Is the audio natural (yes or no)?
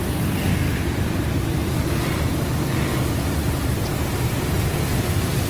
no